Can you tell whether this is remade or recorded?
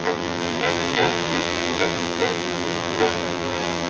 remade